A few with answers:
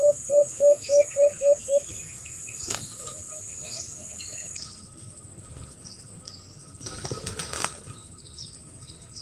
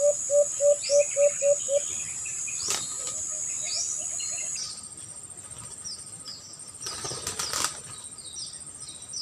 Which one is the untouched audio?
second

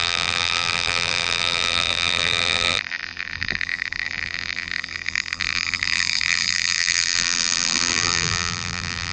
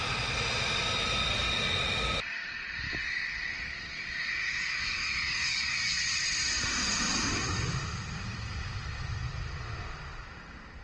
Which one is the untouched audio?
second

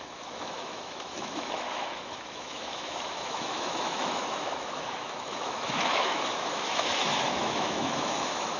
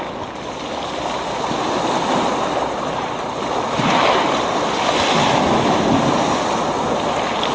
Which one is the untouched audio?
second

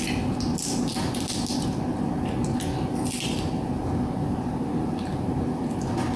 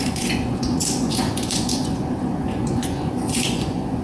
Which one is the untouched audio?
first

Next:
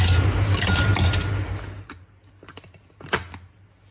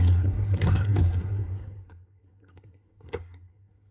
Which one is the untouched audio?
first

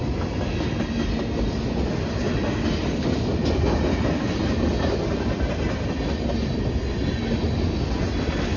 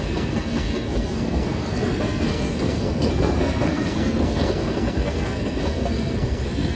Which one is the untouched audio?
first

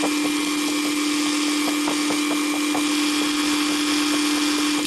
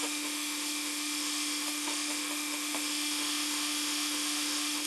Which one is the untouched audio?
first